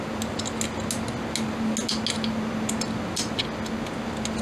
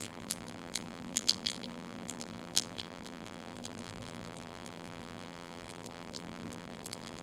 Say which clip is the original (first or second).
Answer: first